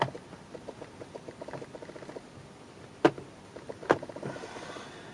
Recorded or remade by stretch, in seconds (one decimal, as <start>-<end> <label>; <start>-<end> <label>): 0.0-5.1 recorded